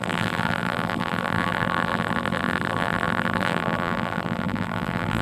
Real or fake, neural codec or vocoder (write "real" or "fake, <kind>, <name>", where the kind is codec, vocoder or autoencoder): fake, vocoder, BigVGAN v2